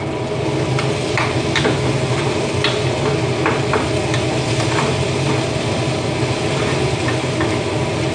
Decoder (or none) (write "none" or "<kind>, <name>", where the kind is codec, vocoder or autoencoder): none